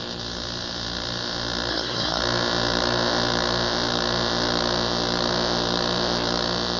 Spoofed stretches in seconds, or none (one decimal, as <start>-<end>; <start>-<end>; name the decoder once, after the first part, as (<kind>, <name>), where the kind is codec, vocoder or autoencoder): 1.7-2.2 (codec, SNAC)